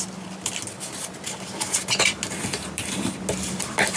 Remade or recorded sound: recorded